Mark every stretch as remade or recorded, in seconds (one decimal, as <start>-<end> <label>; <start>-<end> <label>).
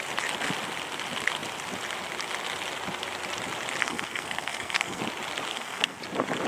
0.0-3.8 recorded; 3.8-5.0 remade; 5.0-5.5 recorded; 5.5-6.0 remade; 6.0-6.5 recorded